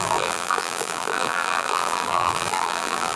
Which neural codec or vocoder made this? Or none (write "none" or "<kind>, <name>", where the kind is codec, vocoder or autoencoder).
vocoder, BigVGAN v2